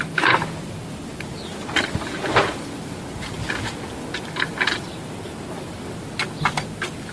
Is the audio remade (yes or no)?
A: no